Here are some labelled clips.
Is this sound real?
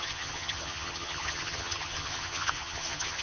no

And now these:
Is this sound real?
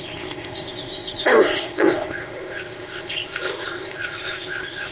no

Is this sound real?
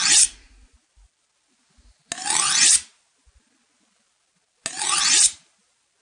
yes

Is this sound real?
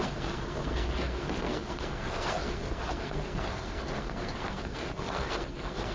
no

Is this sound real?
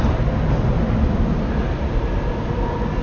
yes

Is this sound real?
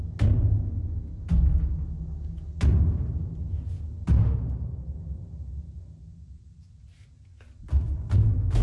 yes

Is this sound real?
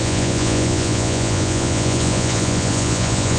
no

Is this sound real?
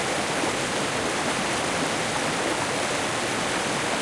yes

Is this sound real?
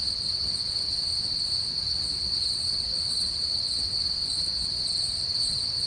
no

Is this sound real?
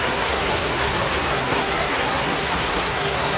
no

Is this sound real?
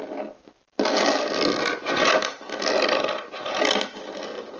yes